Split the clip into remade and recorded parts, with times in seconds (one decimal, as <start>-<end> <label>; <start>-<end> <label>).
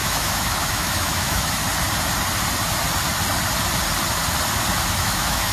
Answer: 0.0-1.6 remade; 1.6-4.9 recorded; 4.9-5.5 remade